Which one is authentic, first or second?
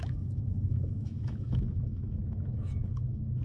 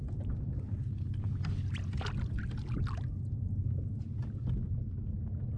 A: second